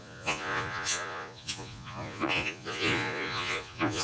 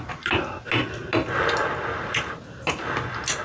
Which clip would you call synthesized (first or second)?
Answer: first